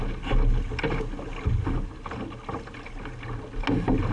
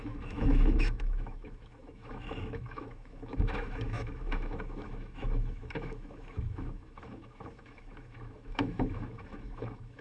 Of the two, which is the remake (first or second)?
second